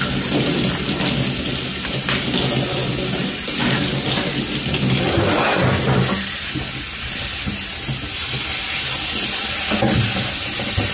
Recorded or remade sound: recorded